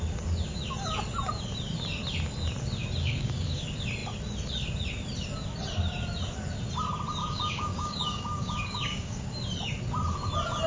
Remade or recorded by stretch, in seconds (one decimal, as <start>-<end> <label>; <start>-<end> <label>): 0.0-3.0 recorded; 3.0-3.6 remade; 3.6-7.2 recorded; 7.2-9.3 remade; 9.3-10.7 recorded